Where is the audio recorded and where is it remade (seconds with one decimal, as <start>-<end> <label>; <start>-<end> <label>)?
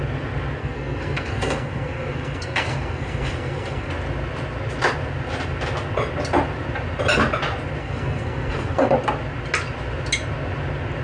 0.0-0.6 recorded; 0.6-3.9 remade; 3.9-7.8 recorded; 7.8-8.9 remade; 8.9-11.0 recorded